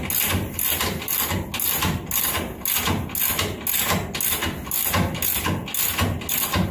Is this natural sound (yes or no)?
yes